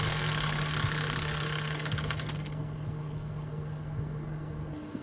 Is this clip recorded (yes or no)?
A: no